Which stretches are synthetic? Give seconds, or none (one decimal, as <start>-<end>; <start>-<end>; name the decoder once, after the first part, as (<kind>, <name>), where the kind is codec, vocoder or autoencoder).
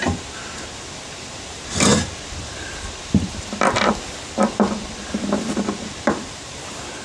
0.0-1.9 (vocoder, BigVGAN v2); 6.1-7.0